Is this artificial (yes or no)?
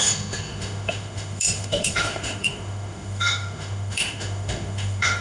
yes